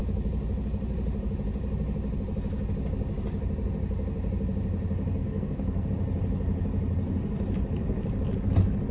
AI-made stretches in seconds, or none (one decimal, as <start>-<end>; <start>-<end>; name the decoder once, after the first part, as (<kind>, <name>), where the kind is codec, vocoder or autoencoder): 5.2-5.9 (codec, SNAC)